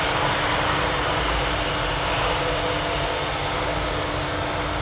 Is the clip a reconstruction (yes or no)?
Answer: no